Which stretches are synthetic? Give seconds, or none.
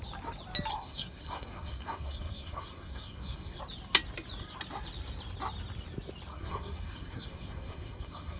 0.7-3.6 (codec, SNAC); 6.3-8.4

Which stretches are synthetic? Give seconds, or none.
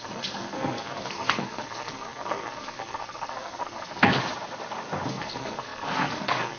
0.0-4.2 (codec, SNAC); 5.1-6.6